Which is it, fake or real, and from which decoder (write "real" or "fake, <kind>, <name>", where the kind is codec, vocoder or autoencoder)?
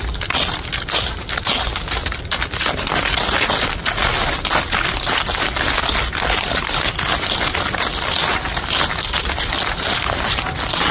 real